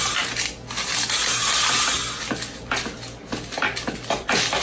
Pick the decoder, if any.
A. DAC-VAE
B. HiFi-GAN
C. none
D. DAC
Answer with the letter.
C